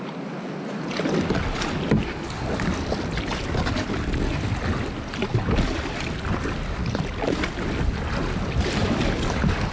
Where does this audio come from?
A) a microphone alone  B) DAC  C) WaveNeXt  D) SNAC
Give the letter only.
A